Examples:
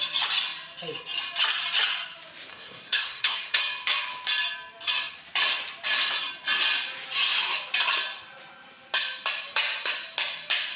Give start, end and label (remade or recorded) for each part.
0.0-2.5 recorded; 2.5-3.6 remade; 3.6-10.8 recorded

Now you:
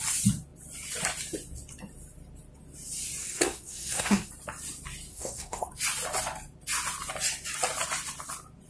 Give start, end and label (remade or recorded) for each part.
0.0-3.2 recorded; 3.2-4.3 remade; 4.3-5.1 recorded; 5.1-5.7 remade; 5.7-8.7 recorded

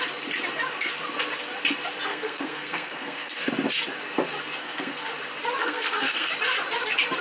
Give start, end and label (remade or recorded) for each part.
0.0-2.1 recorded; 2.1-3.5 remade; 3.5-4.6 recorded; 4.6-5.1 remade; 5.1-5.6 recorded; 5.6-6.3 remade; 6.3-7.2 recorded

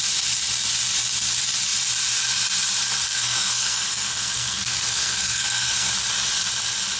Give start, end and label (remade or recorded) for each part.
0.0-3.1 recorded; 3.1-5.9 remade; 5.9-7.0 recorded

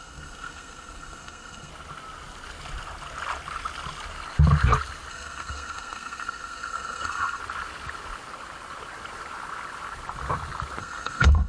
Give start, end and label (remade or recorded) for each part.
0.0-1.7 remade; 1.7-5.1 recorded; 5.1-7.4 remade; 7.4-10.8 recorded; 10.8-11.5 remade

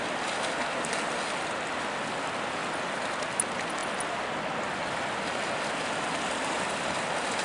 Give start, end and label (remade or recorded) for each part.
0.0-7.4 recorded